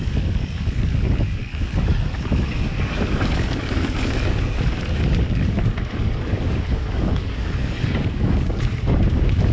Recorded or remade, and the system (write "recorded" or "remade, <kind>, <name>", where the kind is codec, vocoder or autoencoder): remade, codec, DAC